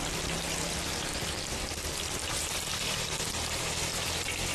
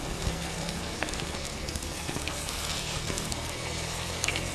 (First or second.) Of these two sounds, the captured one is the first